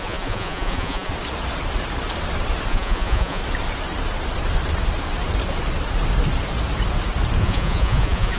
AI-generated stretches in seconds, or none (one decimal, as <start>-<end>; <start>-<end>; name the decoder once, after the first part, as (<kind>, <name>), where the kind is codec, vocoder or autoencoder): 0.0-1.1 (vocoder, Vocos); 2.7-3.4; 7.4-8.4